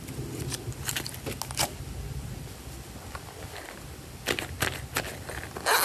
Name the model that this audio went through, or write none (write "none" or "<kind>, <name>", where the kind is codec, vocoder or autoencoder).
none